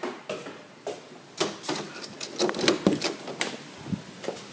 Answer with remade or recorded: recorded